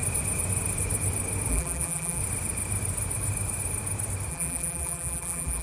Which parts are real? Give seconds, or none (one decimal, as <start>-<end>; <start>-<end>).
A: 0.0-1.5; 2.2-4.3